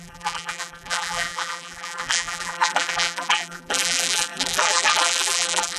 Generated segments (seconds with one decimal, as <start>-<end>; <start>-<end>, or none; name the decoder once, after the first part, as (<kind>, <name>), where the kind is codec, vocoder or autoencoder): 0.0-5.8 (vocoder, BigVGAN v2)